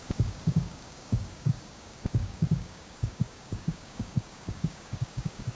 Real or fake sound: fake